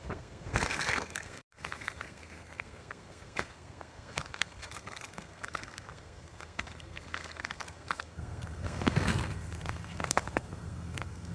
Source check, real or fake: fake